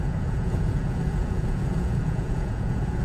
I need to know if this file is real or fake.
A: fake